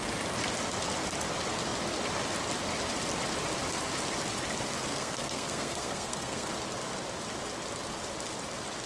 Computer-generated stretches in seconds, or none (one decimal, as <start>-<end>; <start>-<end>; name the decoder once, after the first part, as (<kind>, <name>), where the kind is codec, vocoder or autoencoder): 4.9-6.5 (codec, SNAC)